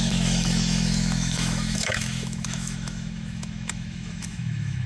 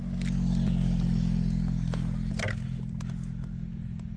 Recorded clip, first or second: second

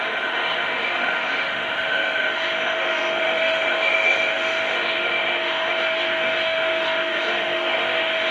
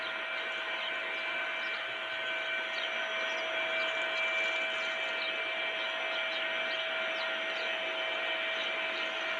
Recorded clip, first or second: second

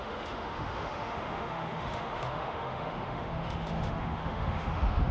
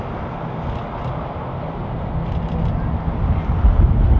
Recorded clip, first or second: second